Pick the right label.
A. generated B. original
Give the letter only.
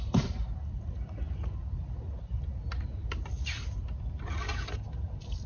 B